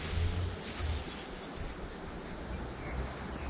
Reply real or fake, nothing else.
real